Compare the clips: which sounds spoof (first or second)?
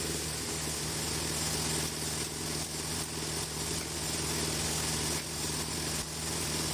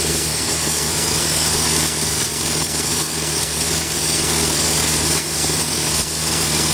second